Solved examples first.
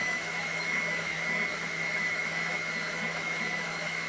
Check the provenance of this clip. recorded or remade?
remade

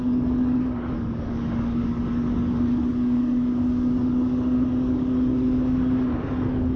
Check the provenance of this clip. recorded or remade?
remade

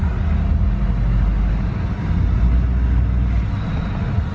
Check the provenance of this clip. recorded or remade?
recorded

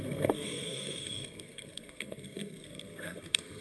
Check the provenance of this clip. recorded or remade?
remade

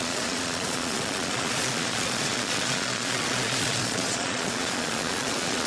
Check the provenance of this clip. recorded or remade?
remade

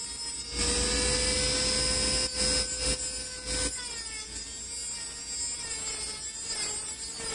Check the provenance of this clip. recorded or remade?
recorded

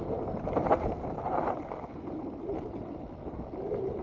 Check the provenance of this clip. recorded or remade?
recorded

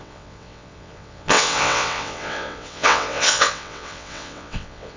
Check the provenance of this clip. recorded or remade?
remade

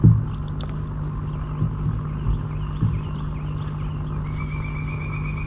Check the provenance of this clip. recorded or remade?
recorded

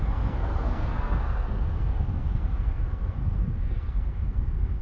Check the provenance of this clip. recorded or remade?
remade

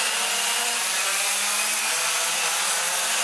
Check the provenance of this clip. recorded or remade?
recorded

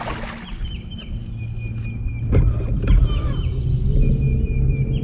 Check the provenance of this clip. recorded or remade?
recorded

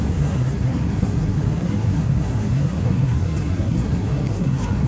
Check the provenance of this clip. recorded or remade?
remade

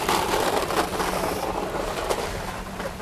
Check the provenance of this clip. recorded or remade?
remade